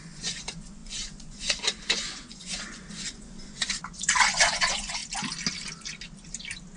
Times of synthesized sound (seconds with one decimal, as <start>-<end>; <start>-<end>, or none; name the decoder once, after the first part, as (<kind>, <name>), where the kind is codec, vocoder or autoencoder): 0.0-5.0 (vocoder, Vocos)